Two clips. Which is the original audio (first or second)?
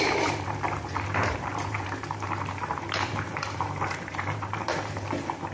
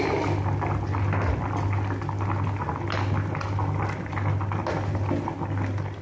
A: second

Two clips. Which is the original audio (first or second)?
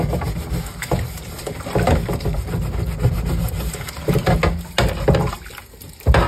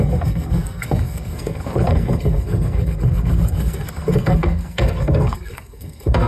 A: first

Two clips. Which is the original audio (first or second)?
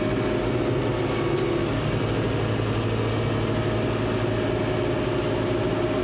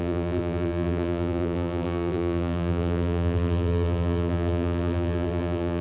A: first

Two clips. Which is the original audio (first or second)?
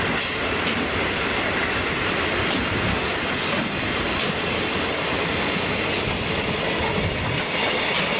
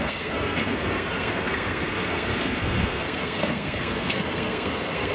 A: first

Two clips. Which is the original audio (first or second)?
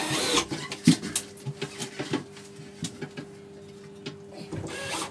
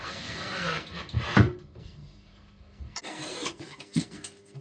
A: first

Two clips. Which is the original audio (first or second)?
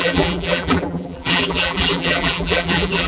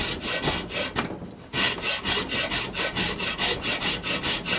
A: second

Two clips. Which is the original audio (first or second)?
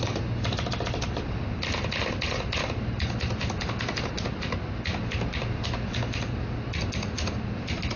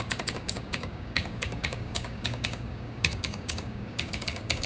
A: first